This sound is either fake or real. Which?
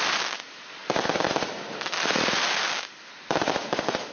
real